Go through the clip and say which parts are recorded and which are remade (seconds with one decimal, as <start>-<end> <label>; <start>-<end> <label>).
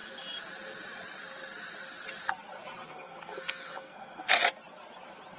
0.0-2.9 recorded; 2.9-4.4 remade; 4.4-5.4 recorded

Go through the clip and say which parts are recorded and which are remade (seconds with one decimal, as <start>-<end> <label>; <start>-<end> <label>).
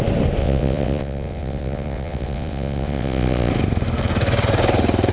0.0-0.4 recorded; 0.4-3.5 remade; 3.5-5.1 recorded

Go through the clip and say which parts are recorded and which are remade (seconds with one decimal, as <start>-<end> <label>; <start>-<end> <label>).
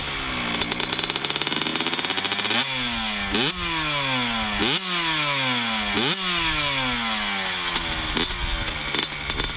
0.0-9.6 recorded